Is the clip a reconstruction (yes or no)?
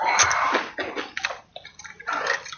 no